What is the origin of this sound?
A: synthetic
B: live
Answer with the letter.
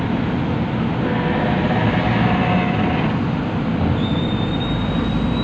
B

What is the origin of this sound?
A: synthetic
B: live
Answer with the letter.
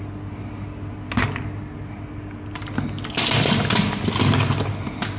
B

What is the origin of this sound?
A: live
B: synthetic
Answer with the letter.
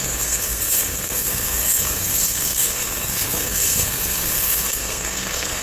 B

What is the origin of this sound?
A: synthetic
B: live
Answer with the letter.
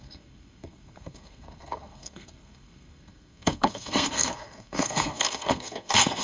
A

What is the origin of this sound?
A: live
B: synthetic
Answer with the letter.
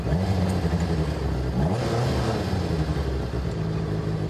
A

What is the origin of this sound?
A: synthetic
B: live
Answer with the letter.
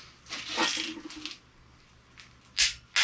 B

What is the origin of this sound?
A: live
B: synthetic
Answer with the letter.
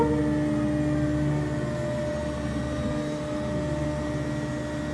A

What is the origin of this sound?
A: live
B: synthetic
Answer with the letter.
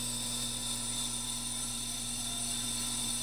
A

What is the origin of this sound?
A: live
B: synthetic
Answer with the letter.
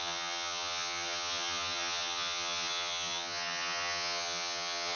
B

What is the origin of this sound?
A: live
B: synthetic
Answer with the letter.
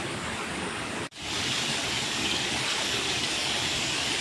B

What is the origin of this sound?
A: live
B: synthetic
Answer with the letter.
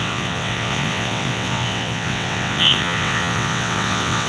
B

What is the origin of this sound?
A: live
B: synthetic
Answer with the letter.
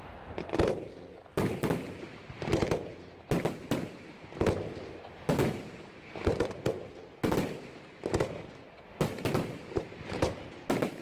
A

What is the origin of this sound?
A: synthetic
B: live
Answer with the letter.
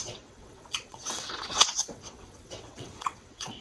A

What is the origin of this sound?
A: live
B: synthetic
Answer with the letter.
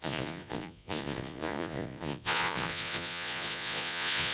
B